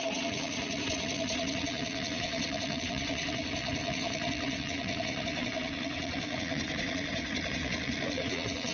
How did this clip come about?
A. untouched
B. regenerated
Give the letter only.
B